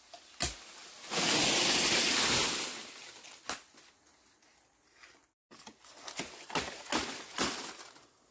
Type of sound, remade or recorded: recorded